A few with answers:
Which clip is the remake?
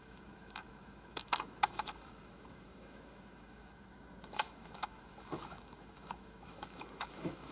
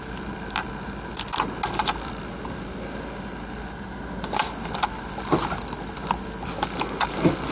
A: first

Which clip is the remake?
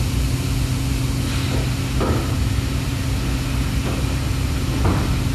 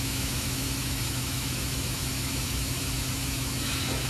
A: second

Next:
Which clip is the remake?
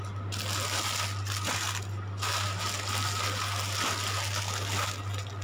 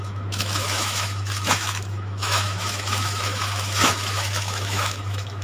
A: second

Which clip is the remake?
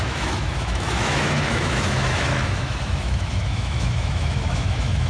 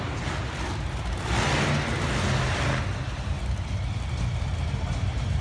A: first